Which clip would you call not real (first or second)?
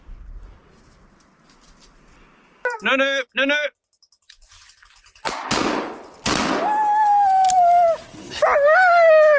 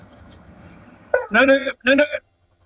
second